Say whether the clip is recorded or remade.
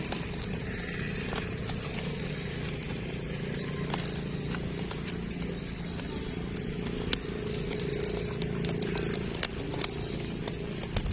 recorded